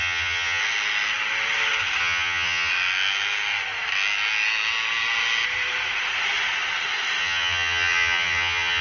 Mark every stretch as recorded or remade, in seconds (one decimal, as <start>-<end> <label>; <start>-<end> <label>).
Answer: 0.0-0.6 remade; 0.6-2.0 recorded; 2.0-2.7 remade; 2.7-7.2 recorded; 7.2-8.8 remade